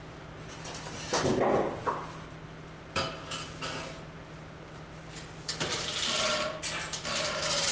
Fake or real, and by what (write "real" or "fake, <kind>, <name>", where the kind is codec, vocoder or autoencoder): real